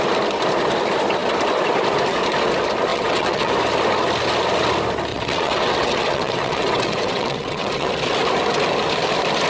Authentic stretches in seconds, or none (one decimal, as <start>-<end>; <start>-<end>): 0.0-2.9; 3.5-5.1; 7.9-9.5